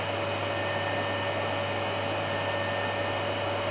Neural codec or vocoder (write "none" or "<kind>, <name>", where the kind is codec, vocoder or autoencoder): none